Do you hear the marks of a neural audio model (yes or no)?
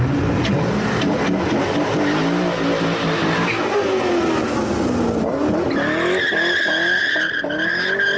no